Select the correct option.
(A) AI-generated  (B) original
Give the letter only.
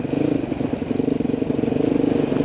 B